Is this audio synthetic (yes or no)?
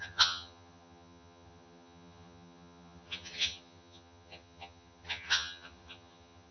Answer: yes